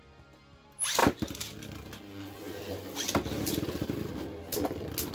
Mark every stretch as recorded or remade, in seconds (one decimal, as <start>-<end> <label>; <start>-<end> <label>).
0.0-5.1 recorded